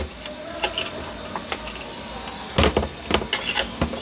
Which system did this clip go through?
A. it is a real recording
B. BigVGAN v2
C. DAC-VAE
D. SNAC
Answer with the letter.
A